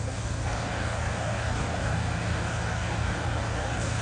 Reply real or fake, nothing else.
fake